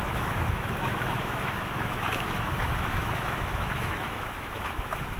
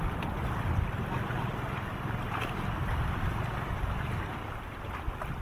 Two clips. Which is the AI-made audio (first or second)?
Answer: first